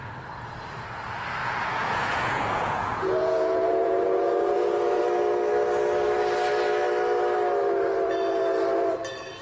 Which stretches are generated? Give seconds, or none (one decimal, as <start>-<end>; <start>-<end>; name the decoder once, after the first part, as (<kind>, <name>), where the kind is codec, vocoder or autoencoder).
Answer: 1.4-5.0 (vocoder, Vocos)